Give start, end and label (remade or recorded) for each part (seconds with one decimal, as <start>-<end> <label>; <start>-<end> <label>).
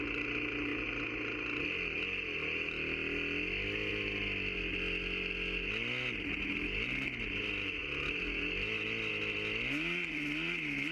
0.0-10.9 recorded